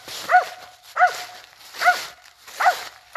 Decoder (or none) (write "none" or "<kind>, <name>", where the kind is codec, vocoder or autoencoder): none